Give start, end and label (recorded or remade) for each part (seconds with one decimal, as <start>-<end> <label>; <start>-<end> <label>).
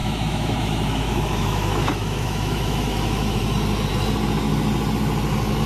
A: 0.0-3.4 remade; 3.4-5.7 recorded